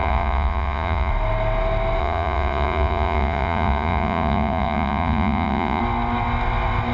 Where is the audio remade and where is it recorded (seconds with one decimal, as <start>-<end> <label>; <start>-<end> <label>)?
0.0-1.1 remade; 1.1-2.0 recorded; 2.0-5.8 remade; 5.8-6.9 recorded